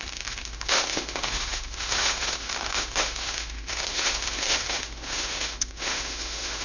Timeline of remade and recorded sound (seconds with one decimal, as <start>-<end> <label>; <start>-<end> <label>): 0.0-6.6 remade